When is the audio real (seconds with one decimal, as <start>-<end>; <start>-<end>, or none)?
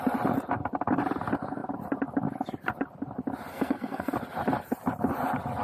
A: 0.0-3.5; 4.1-5.6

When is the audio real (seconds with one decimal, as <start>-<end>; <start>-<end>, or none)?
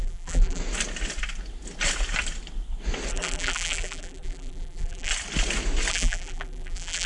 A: 0.6-3.1; 5.1-5.9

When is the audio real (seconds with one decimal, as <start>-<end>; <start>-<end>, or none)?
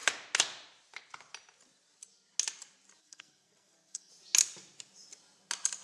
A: 0.0-3.0; 4.1-5.8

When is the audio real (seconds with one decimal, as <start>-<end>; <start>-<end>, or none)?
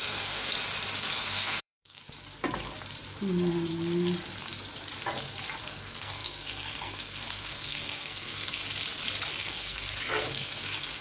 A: 0.5-1.2; 2.0-5.6; 8.6-9.4